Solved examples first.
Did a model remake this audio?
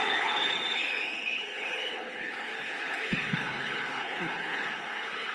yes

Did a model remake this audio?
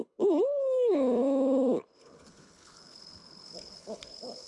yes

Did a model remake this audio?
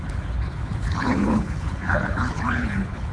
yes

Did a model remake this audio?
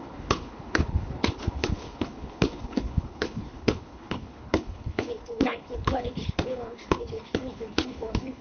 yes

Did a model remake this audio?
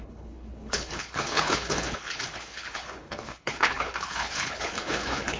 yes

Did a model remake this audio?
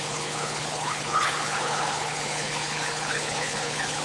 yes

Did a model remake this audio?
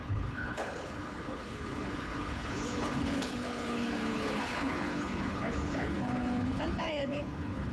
yes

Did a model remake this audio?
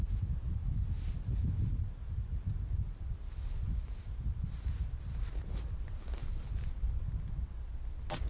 no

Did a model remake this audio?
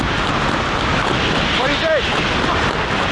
no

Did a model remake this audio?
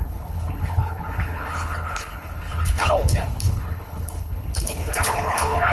yes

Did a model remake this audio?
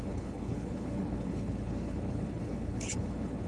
yes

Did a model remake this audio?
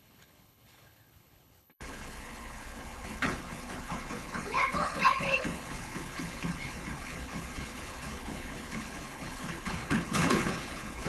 yes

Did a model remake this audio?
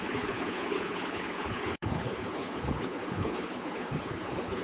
yes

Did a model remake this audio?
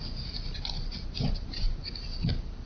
no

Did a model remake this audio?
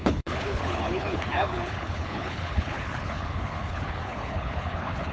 yes